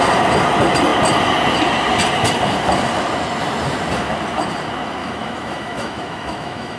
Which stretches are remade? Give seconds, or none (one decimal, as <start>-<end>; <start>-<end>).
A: 5.0-6.8